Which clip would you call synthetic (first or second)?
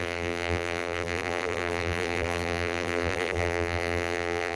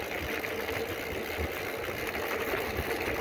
first